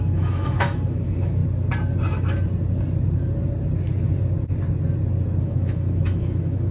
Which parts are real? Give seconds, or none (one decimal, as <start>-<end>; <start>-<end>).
1.4-5.4